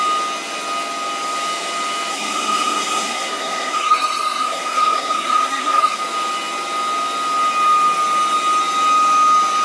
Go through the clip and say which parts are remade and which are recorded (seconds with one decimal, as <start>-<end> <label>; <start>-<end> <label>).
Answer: 0.0-2.1 recorded; 2.1-6.0 remade; 6.0-9.6 recorded